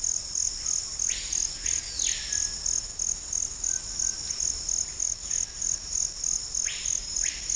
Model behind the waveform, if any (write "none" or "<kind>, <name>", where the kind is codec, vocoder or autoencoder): none